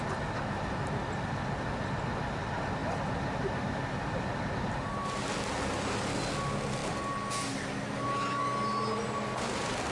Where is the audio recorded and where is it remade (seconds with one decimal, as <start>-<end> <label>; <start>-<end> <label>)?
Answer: 0.0-9.9 recorded